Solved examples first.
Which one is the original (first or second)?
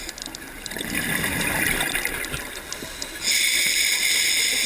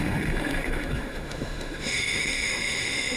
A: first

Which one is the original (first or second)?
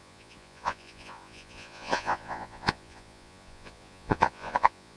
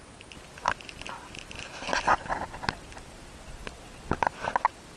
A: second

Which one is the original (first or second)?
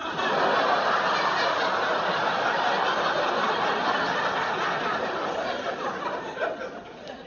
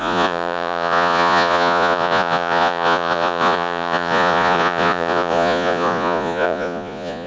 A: first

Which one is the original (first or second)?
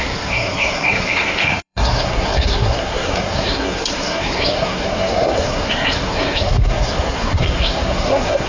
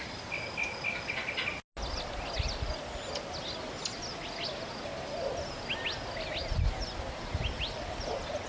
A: second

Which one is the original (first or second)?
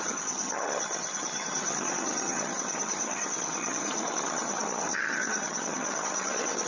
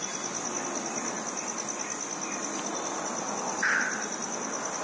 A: second